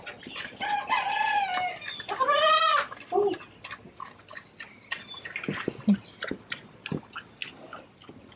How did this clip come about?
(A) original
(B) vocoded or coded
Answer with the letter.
A